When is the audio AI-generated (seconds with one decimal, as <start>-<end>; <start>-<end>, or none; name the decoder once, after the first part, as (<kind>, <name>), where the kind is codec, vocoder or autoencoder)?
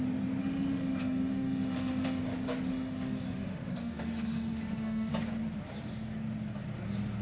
0.4-2.2 (autoencoder, DAC-VAE); 2.7-5.1